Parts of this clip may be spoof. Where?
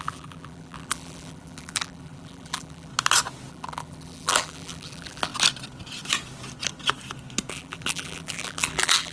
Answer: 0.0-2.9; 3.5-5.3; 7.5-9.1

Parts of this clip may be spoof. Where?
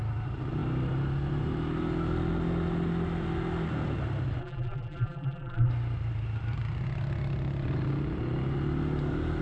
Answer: 4.4-5.7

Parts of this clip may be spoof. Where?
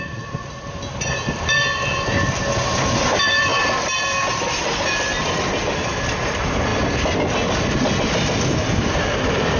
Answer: 0.0-3.5; 5.3-6.7; 7.6-9.6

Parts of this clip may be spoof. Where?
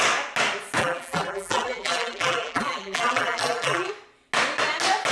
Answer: 0.8-3.9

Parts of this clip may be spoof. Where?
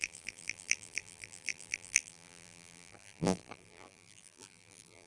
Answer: 0.0-5.1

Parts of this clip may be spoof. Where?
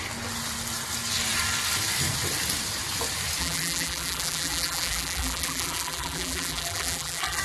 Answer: 3.4-7.4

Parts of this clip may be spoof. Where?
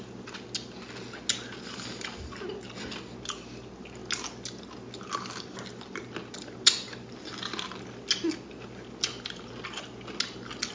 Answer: none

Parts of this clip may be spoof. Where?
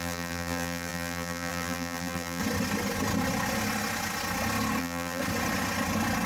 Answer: 0.0-2.4; 4.8-5.2